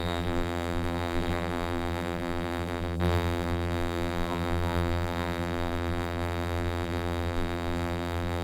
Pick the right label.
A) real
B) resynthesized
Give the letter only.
B